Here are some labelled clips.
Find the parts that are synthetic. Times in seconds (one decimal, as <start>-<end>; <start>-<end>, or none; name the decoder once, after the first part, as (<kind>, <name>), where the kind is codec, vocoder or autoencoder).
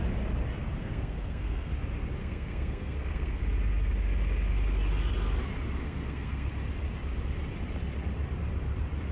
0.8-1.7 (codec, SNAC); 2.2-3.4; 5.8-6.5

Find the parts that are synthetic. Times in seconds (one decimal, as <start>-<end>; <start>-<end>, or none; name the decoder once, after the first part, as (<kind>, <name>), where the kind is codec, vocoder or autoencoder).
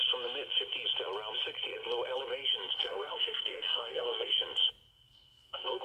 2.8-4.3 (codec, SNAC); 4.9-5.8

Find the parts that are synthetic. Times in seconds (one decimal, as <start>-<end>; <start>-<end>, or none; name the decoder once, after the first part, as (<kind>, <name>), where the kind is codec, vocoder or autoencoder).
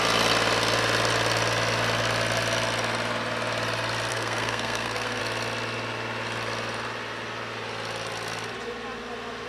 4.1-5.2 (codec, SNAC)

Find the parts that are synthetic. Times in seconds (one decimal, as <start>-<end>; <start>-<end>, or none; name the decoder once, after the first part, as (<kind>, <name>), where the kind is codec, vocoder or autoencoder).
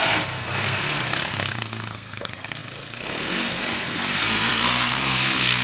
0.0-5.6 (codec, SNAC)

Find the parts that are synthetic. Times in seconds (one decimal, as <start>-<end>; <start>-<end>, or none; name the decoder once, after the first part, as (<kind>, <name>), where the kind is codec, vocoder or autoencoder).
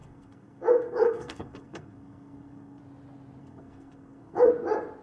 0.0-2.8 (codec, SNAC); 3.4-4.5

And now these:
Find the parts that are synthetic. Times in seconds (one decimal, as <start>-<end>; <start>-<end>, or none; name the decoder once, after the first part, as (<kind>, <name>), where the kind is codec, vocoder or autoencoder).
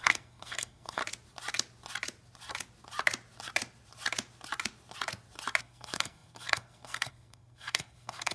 0.0-1.0 (codec, SNAC); 5.6-8.3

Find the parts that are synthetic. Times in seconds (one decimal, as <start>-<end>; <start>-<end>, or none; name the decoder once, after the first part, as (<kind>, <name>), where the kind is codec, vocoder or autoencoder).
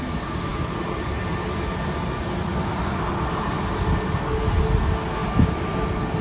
none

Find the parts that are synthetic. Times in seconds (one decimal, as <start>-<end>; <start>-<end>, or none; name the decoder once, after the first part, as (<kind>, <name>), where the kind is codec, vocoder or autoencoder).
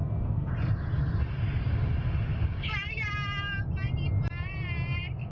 0.0-0.5 (codec, SNAC)